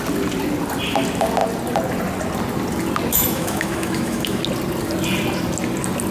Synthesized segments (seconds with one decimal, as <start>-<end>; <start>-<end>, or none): 3.1-4.4